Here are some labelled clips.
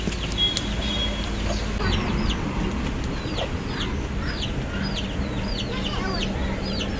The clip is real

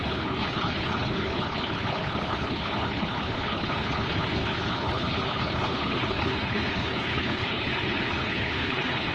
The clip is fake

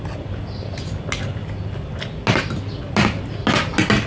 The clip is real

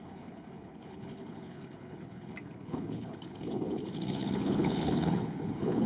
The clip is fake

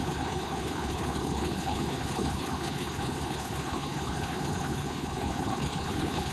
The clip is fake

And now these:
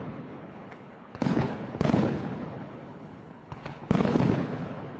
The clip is fake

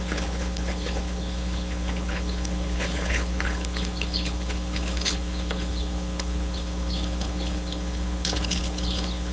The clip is fake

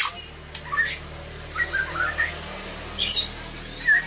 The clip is real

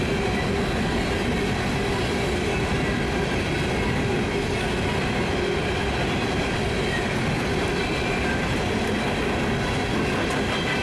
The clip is real